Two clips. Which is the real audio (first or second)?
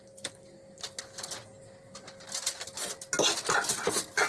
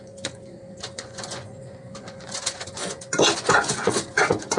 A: first